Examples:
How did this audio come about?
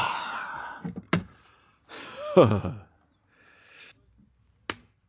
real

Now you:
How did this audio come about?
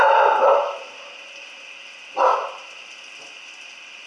real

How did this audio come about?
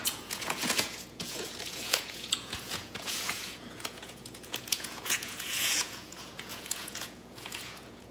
fake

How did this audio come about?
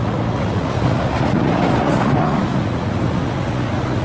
fake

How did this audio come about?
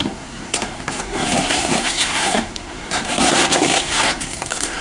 fake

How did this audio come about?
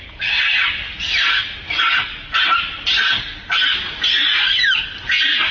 real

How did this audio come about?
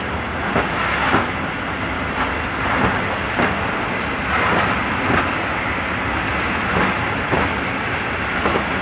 real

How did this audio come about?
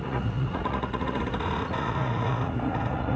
fake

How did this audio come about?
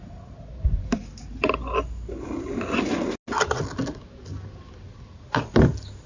real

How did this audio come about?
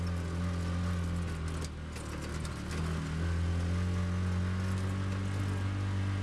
real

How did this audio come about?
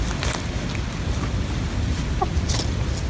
real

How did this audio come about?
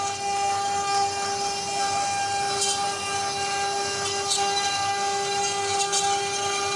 real